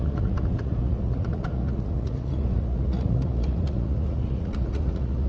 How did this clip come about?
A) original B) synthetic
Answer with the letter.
B